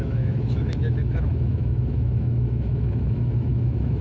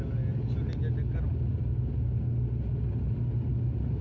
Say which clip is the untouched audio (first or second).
second